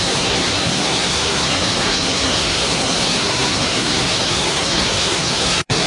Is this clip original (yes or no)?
no